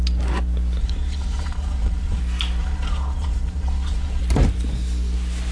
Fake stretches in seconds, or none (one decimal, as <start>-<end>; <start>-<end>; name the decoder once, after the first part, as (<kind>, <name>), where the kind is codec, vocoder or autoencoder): 0.8-2.2 (vocoder, Vocos); 2.6-4.2